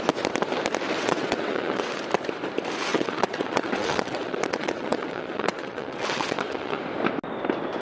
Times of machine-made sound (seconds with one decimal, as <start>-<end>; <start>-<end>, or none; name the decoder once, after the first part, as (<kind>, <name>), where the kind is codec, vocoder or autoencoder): 1.0-2.0 (vocoder, WaveNeXt); 2.9-6.8